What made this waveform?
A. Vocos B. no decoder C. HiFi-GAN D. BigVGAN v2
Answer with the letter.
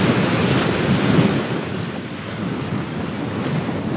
B